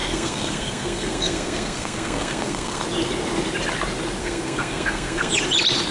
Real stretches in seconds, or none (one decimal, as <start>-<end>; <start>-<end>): 2.8-4.2; 5.3-5.9